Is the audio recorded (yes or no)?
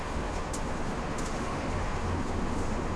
no